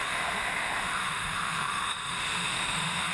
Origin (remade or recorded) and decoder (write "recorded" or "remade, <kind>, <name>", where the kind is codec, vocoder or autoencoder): remade, autoencoder, DAC-VAE